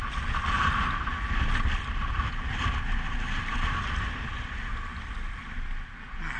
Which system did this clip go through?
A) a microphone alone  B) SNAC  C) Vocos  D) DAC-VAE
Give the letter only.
A